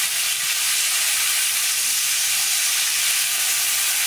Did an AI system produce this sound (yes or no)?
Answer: yes